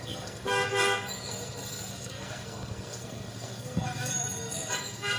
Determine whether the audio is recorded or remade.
remade